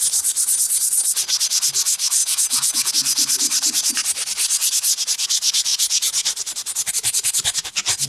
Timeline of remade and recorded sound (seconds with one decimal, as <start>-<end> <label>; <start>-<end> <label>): 0.0-2.2 recorded; 2.2-2.9 remade; 2.9-8.1 recorded